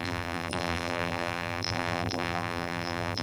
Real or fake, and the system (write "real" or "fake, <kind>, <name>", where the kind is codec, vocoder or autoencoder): fake, vocoder, BigVGAN v2